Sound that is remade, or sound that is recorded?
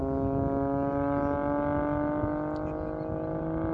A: recorded